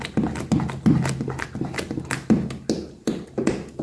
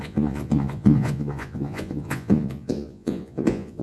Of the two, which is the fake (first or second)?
second